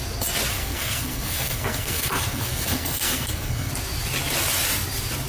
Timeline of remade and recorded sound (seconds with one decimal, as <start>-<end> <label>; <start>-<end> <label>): 0.0-0.5 recorded; 0.5-3.7 remade; 3.7-5.3 recorded